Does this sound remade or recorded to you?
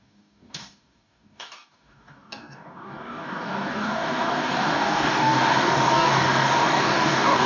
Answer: remade